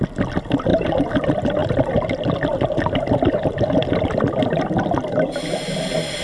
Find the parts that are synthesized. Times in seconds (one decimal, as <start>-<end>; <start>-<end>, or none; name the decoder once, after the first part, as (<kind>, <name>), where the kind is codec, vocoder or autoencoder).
0.7-1.2 (vocoder, BigVGAN v2); 1.6-2.1